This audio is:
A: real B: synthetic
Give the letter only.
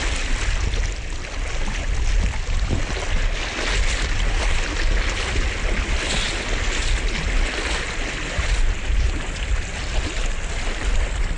A